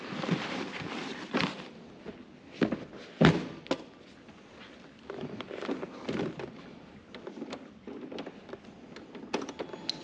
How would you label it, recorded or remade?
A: recorded